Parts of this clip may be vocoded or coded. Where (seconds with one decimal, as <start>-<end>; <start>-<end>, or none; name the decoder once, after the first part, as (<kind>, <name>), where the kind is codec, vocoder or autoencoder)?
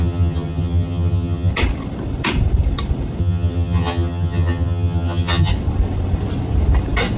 0.0-1.5 (vocoder, HiFi-GAN); 3.2-5.5